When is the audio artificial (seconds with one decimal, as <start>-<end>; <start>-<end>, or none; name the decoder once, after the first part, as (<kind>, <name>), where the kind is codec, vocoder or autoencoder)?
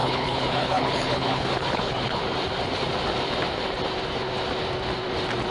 0.0-2.2 (codec, HILCodec)